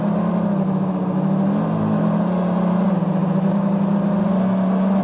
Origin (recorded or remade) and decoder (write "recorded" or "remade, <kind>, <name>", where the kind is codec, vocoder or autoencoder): recorded